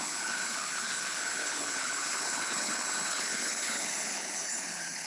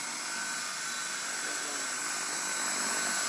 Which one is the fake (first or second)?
first